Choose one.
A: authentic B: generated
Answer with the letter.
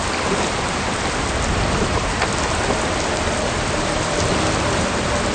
A